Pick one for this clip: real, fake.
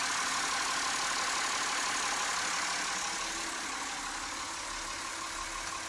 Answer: real